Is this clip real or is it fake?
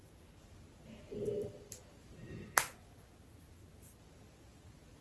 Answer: real